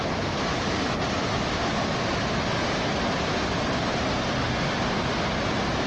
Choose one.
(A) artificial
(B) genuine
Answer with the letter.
B